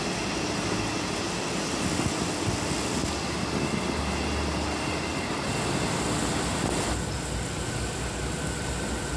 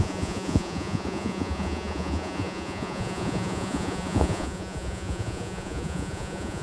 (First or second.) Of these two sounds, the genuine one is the first